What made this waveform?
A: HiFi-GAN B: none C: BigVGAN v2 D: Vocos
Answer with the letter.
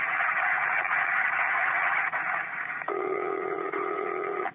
D